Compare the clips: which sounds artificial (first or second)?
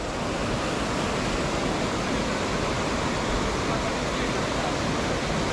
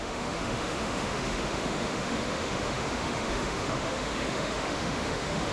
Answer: second